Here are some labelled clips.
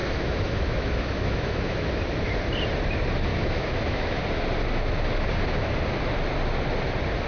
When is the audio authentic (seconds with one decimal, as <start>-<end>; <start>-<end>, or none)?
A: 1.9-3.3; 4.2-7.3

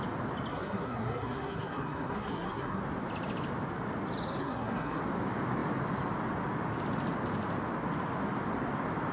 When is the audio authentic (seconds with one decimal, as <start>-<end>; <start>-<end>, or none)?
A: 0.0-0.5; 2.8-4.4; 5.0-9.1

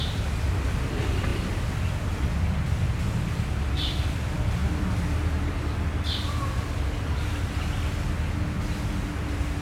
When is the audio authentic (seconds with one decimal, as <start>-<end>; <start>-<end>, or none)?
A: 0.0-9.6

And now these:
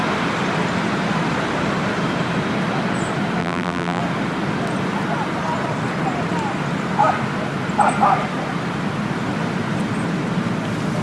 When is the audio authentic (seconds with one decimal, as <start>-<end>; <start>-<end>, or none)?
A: 0.0-3.4; 4.0-11.0

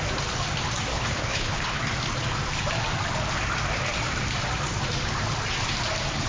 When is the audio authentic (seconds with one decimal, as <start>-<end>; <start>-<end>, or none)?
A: 0.0-0.9; 1.8-6.3

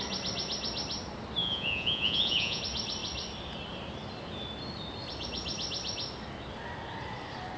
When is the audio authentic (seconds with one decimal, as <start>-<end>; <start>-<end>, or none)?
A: 0.0-1.4; 2.6-7.6

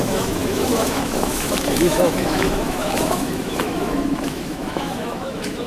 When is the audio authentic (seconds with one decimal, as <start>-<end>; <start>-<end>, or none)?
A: none

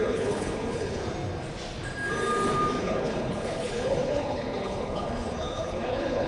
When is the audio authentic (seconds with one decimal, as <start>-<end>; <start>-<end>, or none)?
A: 1.0-2.8